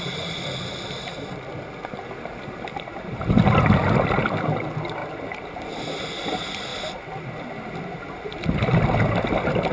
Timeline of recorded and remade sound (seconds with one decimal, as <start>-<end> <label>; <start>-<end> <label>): 0.0-9.7 recorded